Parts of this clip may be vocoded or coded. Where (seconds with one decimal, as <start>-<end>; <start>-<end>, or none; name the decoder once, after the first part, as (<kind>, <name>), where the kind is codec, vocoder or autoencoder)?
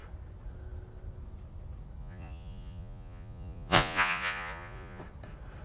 2.0-5.0 (vocoder, Vocos)